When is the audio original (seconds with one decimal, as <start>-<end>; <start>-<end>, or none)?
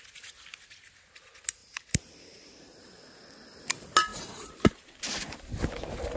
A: 0.0-1.6; 2.8-4.1; 5.5-6.2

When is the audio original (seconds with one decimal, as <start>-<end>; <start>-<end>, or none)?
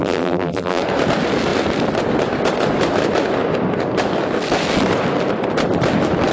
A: 0.8-6.3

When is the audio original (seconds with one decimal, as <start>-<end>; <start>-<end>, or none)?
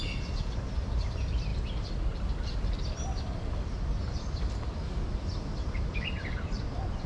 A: none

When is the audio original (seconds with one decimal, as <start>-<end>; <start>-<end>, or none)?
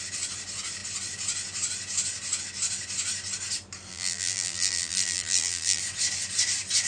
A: 0.0-3.9; 5.8-6.9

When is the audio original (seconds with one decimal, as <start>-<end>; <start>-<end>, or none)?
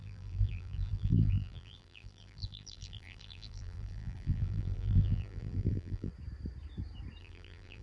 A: 6.1-7.2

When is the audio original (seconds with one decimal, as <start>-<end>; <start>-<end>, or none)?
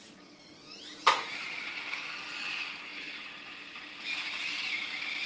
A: 0.0-0.6; 1.7-5.3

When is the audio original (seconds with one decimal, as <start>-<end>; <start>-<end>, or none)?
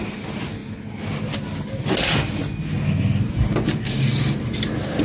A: 0.6-3.3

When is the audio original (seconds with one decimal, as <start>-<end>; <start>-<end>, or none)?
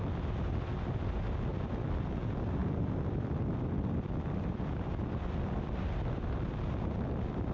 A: 0.0-1.5; 2.0-2.6; 5.9-7.5